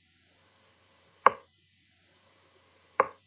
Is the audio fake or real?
fake